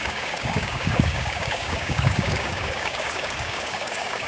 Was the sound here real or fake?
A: fake